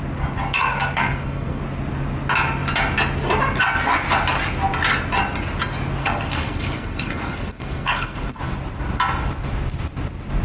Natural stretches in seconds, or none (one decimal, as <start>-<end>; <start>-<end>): 0.0-0.7; 1.6-6.0; 8.4-10.4